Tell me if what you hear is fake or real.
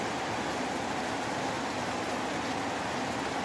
real